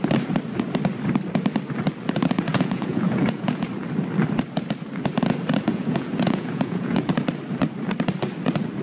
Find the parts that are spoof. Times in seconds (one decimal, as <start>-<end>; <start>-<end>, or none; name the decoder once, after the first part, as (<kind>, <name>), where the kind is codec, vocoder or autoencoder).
2.5-3.7 (vocoder, Vocos); 5.7-7.1